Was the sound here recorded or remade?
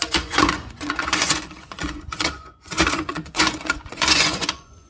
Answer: remade